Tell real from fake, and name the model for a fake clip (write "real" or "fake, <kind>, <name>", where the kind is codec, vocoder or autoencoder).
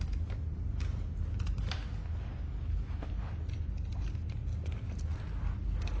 real